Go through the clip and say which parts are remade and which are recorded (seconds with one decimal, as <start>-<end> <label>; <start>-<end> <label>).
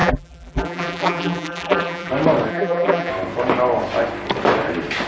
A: 0.0-2.1 remade; 2.1-2.5 recorded; 2.5-3.1 remade; 3.1-5.1 recorded